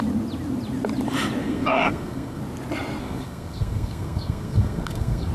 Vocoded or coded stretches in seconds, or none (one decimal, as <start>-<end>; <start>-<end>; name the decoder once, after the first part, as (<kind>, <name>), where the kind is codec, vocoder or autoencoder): 1.4-2.4 (codec, SNAC); 3.0-5.3